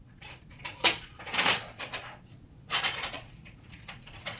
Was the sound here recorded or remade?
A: remade